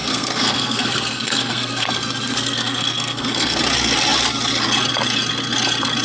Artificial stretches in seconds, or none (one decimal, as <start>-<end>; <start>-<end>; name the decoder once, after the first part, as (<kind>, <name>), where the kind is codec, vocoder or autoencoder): 0.0-3.6 (codec, SNAC)